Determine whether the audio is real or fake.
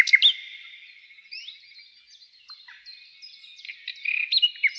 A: real